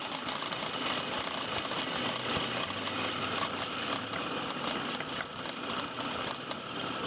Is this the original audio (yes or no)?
yes